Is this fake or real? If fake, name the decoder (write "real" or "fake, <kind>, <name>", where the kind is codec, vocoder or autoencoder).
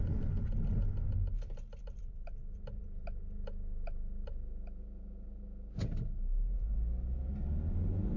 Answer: real